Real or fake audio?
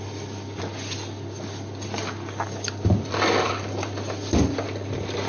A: real